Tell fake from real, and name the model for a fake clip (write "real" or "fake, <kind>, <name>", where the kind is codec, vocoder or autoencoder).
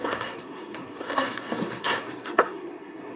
fake, codec, SNAC